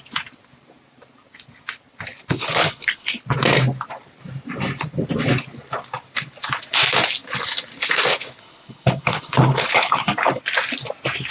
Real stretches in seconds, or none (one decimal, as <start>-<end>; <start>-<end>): 0.0-2.4; 3.2-8.4; 10.4-11.3